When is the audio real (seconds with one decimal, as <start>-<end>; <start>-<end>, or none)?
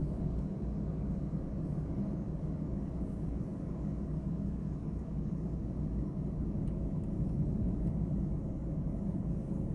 none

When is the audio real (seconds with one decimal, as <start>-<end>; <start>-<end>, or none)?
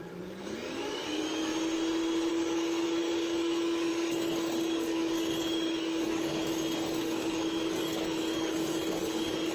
1.5-2.3; 6.4-7.0